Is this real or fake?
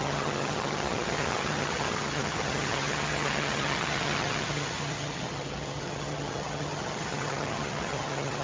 fake